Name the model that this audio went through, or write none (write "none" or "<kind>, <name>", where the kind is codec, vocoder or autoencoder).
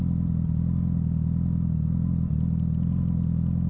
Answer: none